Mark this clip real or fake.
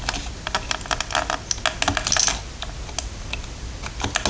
real